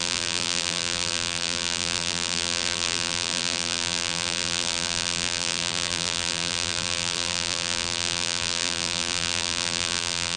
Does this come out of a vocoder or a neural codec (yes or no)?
yes